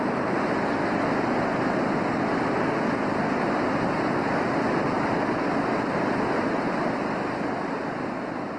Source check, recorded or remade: recorded